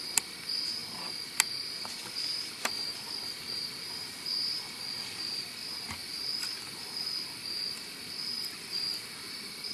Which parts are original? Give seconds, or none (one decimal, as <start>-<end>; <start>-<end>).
0.0-6.0

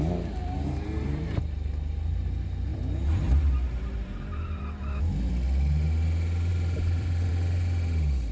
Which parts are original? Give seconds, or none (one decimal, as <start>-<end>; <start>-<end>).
0.0-0.4; 1.4-2.7; 5.0-6.5; 7.3-8.3

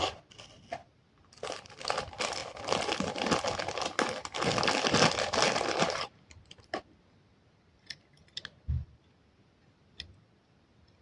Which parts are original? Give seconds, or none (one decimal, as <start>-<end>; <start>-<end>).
0.0-11.0

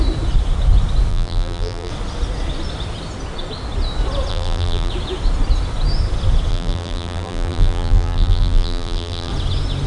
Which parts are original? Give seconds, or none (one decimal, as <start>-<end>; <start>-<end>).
0.0-1.1; 1.9-4.3; 4.9-6.5; 9.3-9.9

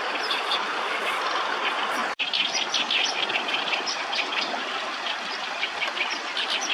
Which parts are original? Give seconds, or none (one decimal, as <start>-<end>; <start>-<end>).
0.0-2.0; 6.0-6.7

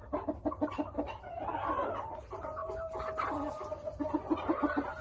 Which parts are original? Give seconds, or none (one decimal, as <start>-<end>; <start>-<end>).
0.0-5.0